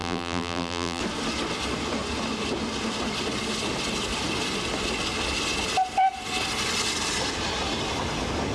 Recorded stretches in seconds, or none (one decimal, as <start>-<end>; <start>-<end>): 1.0-8.5